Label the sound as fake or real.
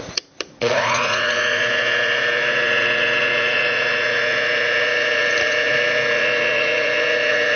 fake